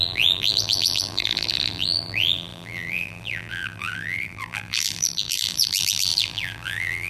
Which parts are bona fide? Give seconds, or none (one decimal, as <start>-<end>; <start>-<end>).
none